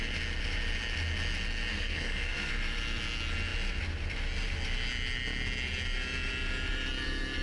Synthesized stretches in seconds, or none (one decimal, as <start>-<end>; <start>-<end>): 1.7-2.5